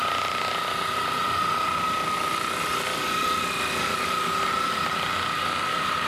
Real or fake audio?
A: real